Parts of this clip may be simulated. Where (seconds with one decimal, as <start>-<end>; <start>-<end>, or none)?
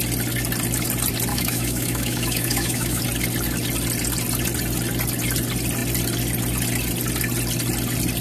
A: 1.3-3.0